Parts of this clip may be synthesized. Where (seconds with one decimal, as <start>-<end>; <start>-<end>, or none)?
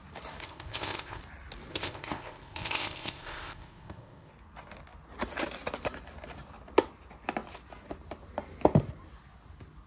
0.4-1.2; 1.7-4.3